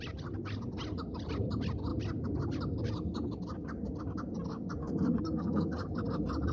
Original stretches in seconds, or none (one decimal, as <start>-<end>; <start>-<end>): 0.0-4.8; 5.7-6.5